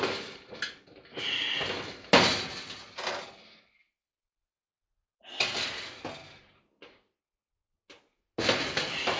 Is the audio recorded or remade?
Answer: recorded